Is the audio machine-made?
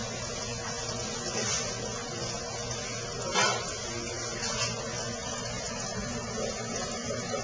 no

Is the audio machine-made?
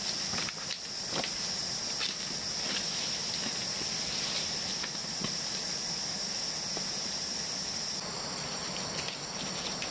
no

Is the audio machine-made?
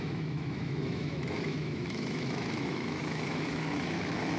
yes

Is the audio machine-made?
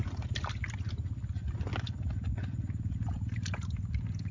no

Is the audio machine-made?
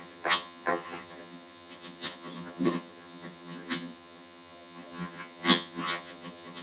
yes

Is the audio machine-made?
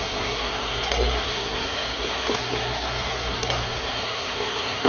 yes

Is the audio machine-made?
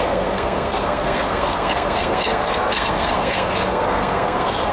yes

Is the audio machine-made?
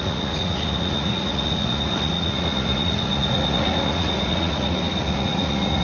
yes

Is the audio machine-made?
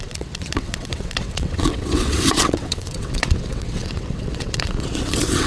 yes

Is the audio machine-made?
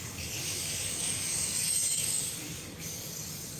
yes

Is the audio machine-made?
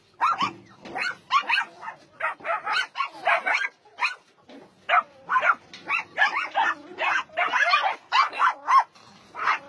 no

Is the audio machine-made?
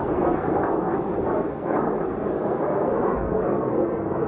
yes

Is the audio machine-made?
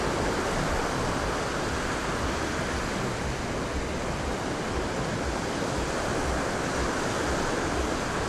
no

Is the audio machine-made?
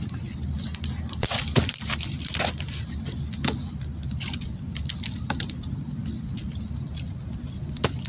yes